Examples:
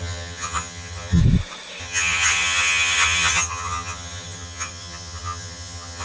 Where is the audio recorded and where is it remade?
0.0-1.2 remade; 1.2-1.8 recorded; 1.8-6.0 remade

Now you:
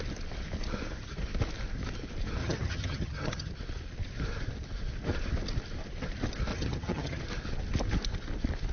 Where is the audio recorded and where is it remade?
0.0-2.4 recorded; 2.4-3.5 remade; 3.5-6.5 recorded; 6.5-7.2 remade; 7.2-8.7 recorded

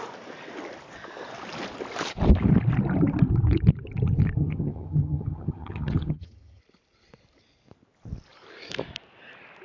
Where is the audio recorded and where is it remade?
0.0-4.4 recorded; 4.4-6.6 remade; 6.6-9.6 recorded

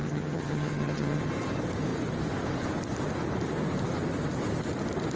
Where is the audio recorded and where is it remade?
0.0-1.2 remade; 1.2-5.2 recorded

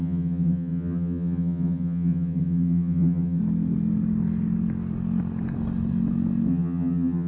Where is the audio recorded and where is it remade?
0.0-3.4 remade; 3.4-6.5 recorded; 6.5-7.3 remade

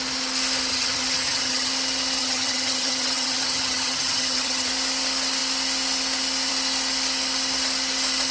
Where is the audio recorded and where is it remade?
0.0-0.7 recorded; 0.7-1.7 remade; 1.7-2.2 recorded; 2.2-4.7 remade; 4.7-8.3 recorded